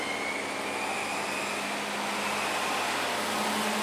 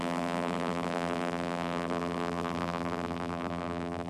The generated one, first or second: second